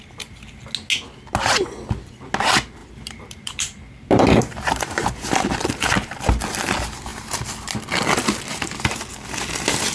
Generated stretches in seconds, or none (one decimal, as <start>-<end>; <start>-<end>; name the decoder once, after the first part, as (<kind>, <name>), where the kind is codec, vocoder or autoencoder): 2.8-6.3 (vocoder, BigVGAN v2)